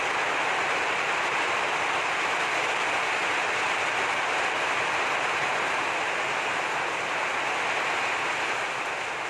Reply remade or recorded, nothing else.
recorded